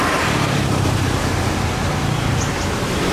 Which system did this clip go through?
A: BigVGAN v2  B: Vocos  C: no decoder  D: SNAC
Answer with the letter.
A